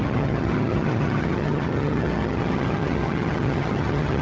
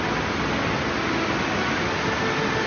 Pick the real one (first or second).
second